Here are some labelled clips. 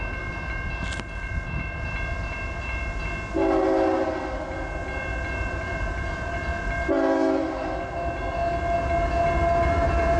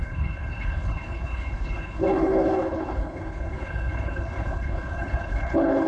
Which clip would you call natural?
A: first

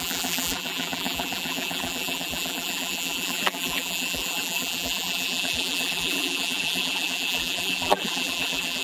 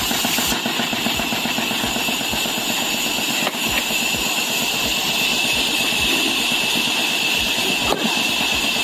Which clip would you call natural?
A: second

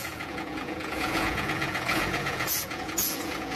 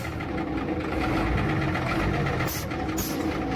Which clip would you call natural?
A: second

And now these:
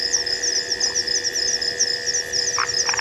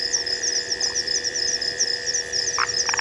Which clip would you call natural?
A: first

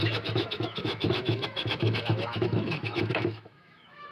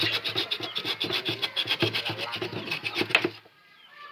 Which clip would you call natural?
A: second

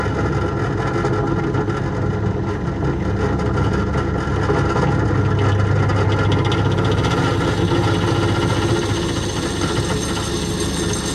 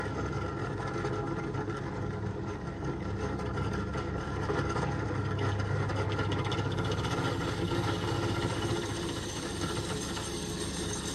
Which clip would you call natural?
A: first